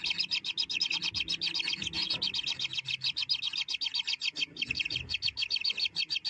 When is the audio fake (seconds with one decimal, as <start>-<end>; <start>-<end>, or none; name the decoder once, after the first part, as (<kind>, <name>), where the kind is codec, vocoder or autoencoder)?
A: none